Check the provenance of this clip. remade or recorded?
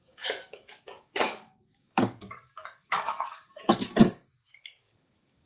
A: remade